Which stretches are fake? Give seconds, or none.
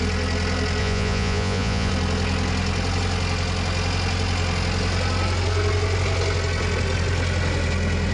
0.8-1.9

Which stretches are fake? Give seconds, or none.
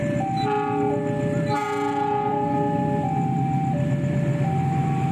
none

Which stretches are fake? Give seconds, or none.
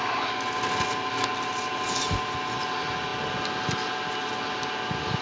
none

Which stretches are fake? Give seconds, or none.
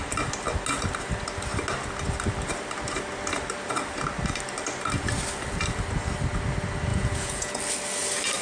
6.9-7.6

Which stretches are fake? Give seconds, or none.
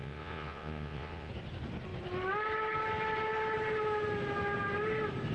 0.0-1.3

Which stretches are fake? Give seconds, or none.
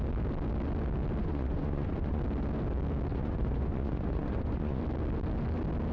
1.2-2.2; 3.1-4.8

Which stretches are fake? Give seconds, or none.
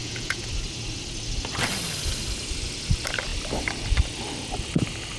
0.0-0.5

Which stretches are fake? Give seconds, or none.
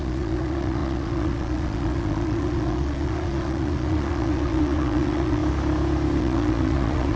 0.0-5.4; 6.2-7.2